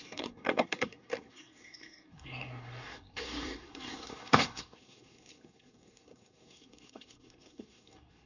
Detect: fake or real fake